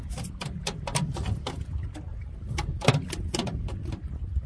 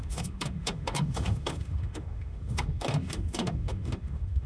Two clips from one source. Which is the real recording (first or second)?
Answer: first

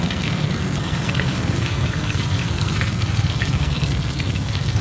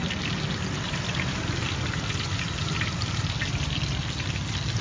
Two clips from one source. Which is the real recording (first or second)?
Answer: second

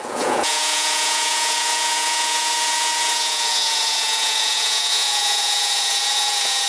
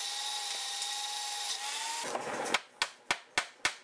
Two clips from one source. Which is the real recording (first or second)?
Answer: second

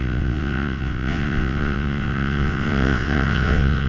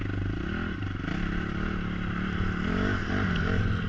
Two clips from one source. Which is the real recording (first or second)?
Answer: second